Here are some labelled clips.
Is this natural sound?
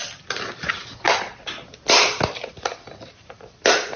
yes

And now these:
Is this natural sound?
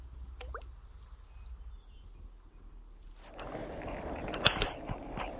yes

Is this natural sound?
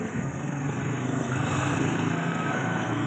no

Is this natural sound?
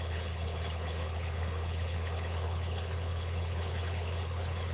no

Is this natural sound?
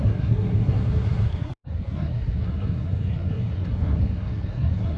no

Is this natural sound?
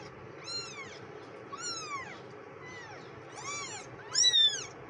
yes